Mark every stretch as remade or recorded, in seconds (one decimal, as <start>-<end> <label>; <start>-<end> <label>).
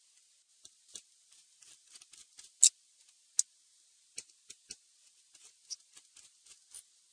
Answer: 0.0-7.1 recorded